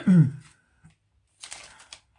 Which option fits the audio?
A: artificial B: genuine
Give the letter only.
B